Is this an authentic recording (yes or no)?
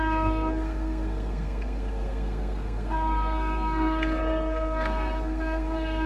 no